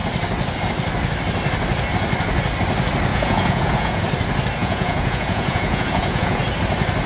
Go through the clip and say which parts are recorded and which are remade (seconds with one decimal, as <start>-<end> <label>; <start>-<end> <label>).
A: 0.0-3.1 recorded; 3.1-4.0 remade; 4.0-4.6 recorded; 4.6-6.4 remade; 6.4-7.1 recorded